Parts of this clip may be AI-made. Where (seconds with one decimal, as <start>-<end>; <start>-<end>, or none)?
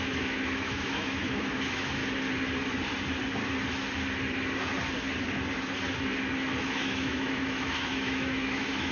0.0-2.0; 6.6-8.9